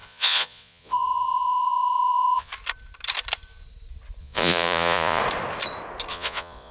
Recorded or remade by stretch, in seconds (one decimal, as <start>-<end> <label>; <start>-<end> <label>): 0.0-2.5 remade; 2.5-4.2 recorded; 4.2-5.2 remade; 5.2-6.1 recorded; 6.1-6.7 remade